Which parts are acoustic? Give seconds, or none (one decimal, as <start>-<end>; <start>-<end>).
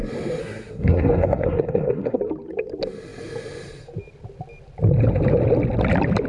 0.0-0.4; 2.2-6.3